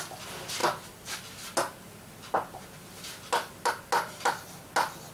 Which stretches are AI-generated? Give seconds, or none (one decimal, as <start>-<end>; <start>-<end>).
none